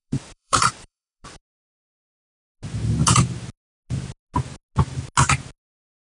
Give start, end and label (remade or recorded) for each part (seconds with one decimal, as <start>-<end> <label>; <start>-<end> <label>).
0.0-1.4 remade; 1.4-6.1 recorded